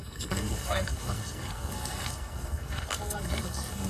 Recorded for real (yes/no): no